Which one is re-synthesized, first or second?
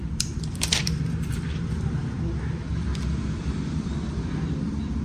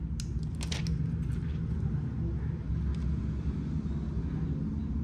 first